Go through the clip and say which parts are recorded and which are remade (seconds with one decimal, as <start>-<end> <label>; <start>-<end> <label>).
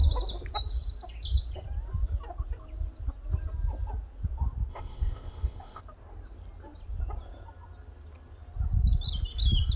0.0-4.7 recorded; 4.7-5.8 remade; 5.8-9.8 recorded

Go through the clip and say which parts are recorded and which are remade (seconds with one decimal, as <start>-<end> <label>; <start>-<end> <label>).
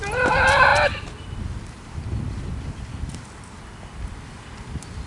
0.0-5.1 recorded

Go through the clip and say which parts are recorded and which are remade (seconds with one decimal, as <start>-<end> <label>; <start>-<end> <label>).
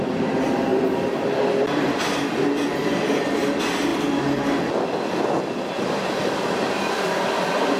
0.0-0.7 remade; 0.7-1.4 recorded; 1.4-3.9 remade; 3.9-5.8 recorded; 5.8-7.8 remade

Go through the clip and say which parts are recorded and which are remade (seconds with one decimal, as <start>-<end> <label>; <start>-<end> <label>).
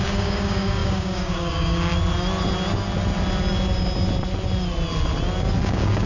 0.0-1.9 remade; 1.9-5.6 recorded; 5.6-6.1 remade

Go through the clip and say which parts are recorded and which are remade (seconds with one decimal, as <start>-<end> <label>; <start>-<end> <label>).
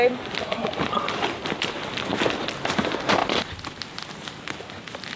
0.0-5.2 recorded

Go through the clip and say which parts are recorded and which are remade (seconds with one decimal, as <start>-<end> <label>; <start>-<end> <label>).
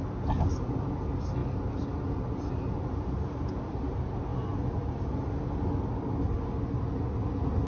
0.0-7.7 recorded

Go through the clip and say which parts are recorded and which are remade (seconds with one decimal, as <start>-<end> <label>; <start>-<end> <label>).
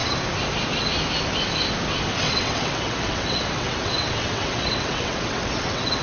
0.0-2.1 recorded; 2.1-6.0 remade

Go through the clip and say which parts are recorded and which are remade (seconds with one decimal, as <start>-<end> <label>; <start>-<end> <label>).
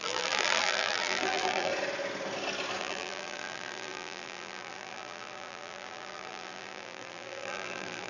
0.0-1.7 remade; 1.7-2.8 recorded; 2.8-8.1 remade